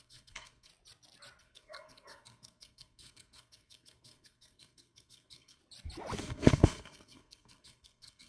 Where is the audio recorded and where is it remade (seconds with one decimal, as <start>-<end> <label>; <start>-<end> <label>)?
0.0-0.7 remade; 0.7-1.4 recorded; 1.4-5.6 remade; 5.6-6.2 recorded; 6.2-8.3 remade

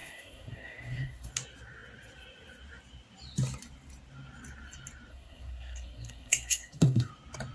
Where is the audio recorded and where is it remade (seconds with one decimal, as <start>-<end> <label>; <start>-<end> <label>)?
0.0-1.3 remade; 1.3-5.1 recorded; 5.1-7.1 remade; 7.1-7.5 recorded